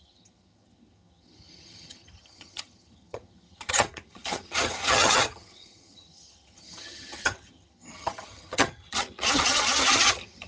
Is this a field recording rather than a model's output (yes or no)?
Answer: no